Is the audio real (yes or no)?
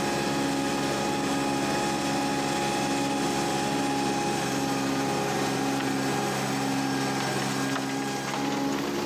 yes